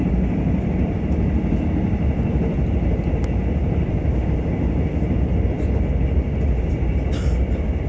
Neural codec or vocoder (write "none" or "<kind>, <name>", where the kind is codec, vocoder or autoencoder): none